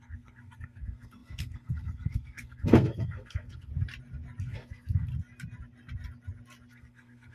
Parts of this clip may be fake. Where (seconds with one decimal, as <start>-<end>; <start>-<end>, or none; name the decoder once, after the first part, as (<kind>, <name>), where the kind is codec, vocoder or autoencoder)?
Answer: 0.0-3.7 (codec, SNAC); 4.4-5.1; 6.7-7.3